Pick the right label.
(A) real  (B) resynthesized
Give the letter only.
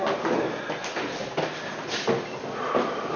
A